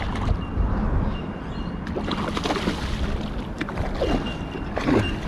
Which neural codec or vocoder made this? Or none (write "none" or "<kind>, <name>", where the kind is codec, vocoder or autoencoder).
none